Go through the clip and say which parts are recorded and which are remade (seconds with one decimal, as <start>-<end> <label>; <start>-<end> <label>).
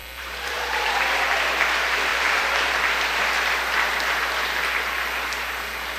0.0-0.9 remade; 0.9-2.1 recorded; 2.1-2.8 remade; 2.8-6.0 recorded